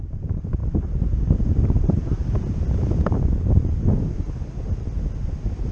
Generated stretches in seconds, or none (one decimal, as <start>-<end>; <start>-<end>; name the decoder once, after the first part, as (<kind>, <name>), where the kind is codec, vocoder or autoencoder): 0.0-2.2 (vocoder, BigVGAN v2)